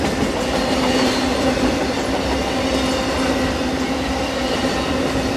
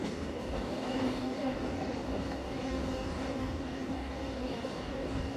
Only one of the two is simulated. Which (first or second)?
second